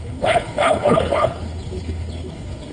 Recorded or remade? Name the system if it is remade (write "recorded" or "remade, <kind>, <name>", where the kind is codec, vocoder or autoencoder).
remade, codec, HILCodec